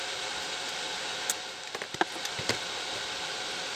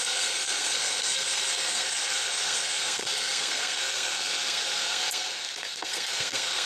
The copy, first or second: second